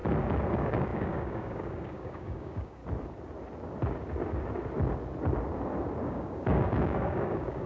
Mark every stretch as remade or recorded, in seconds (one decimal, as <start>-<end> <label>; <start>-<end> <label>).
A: 0.0-0.5 recorded; 0.5-2.8 remade; 2.8-6.0 recorded; 6.0-7.7 remade